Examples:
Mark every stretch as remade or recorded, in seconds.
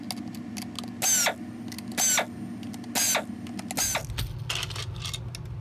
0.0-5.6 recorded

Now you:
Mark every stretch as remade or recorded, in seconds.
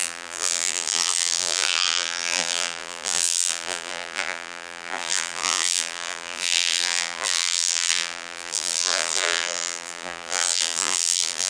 0.0-11.5 remade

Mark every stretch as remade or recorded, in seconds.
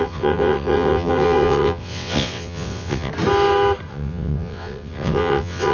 0.0-3.1 remade; 3.1-3.9 recorded; 3.9-5.7 remade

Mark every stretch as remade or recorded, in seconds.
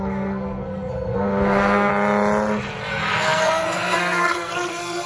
0.0-1.9 remade; 1.9-2.9 recorded; 2.9-5.1 remade